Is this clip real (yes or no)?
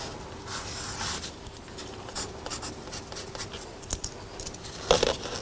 yes